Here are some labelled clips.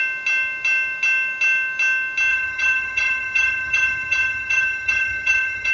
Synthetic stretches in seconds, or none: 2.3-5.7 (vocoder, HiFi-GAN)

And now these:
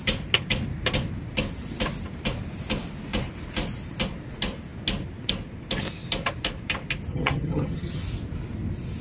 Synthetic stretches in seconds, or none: 7.1-8.0 (vocoder, HiFi-GAN)

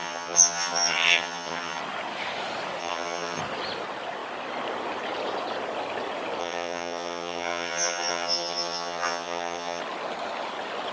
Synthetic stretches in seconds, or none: 0.0-1.8 (vocoder, HiFi-GAN); 2.8-3.4; 6.4-9.8

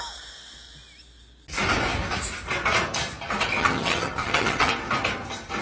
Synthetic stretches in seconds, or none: 3.6-4.7 (vocoder, HiFi-GAN)

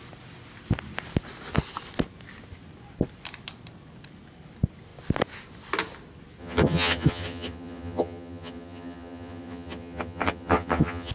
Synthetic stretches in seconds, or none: 6.4-11.1 (vocoder, HiFi-GAN)

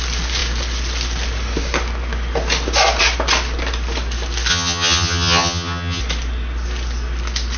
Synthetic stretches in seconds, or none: 4.5-6.0 (vocoder, HiFi-GAN)

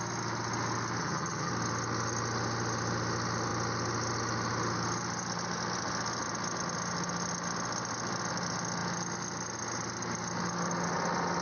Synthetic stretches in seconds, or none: 1.0-1.5 (vocoder, HiFi-GAN)